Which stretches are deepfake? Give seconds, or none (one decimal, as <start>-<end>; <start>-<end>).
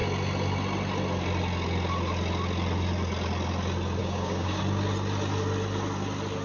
4.0-4.6